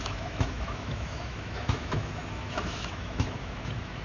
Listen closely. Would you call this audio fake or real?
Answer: fake